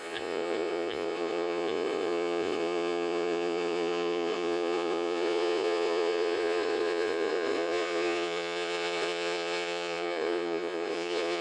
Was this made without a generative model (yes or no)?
no